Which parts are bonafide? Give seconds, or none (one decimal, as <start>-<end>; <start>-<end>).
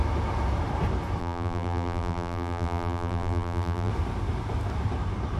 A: 0.0-1.2; 3.9-5.4